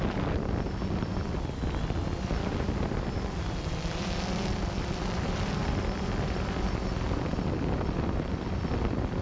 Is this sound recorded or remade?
remade